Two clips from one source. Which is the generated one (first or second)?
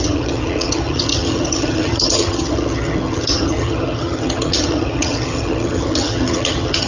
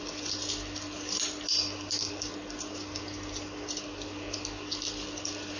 first